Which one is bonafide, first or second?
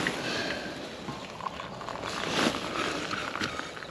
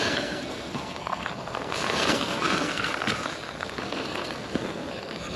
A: first